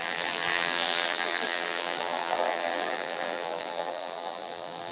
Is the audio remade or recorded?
remade